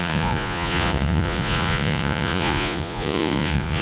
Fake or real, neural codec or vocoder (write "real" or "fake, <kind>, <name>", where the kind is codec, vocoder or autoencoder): fake, vocoder, Vocos